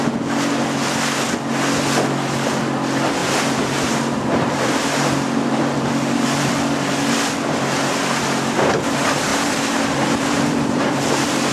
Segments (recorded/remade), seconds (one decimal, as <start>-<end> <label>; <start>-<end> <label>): 0.0-3.2 recorded; 3.2-6.5 remade; 6.5-9.3 recorded; 9.3-11.5 remade